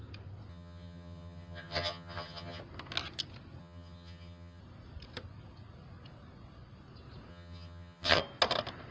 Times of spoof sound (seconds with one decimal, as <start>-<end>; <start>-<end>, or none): 0.5-2.6; 3.6-4.6; 7.3-8.2